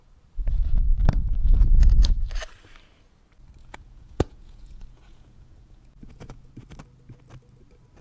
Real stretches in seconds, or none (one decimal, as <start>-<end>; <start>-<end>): 0.0-1.4; 2.2-3.6; 6.5-8.0